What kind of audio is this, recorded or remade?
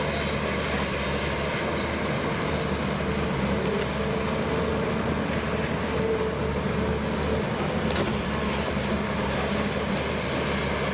recorded